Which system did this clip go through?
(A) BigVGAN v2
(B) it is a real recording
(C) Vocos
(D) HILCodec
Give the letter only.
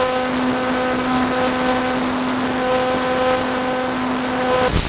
B